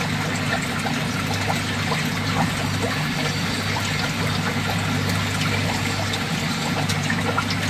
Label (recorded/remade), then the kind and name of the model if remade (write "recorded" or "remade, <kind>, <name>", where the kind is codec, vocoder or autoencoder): recorded